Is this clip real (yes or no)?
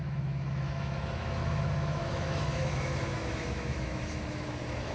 no